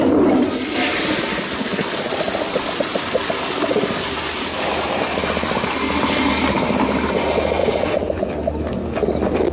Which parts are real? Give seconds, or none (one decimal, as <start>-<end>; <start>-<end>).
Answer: 0.0-7.6; 8.3-9.5